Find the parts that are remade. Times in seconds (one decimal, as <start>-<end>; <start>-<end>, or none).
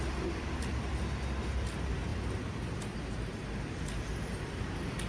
none